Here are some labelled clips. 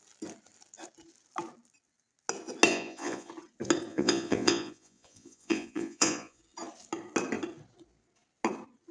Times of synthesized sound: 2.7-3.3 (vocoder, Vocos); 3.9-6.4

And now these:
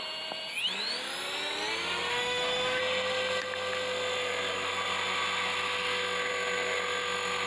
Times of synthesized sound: 2.1-2.8 (autoencoder, DAC-VAE)

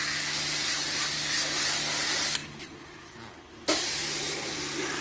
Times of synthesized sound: 2.4-5.0 (vocoder, BigVGAN v2)

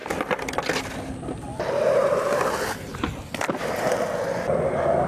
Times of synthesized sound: 2.0-2.6 (vocoder, BigVGAN v2)

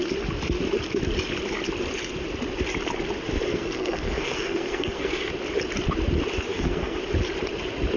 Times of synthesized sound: 3.5-5.3 (codec, SNAC); 6.5-7.0

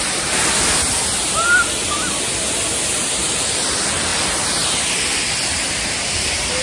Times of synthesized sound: 0.0-4.1 (vocoder, BigVGAN v2); 6.1-6.6

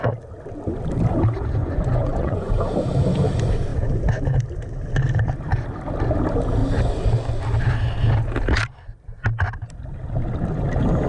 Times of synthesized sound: 1.6-2.6 (vocoder, Vocos)